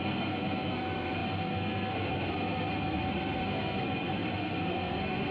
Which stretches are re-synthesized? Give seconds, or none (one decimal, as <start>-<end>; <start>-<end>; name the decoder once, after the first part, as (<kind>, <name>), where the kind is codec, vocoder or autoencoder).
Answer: 0.0-5.3 (codec, SNAC)